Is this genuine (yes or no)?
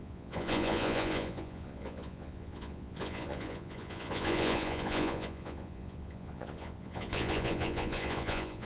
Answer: no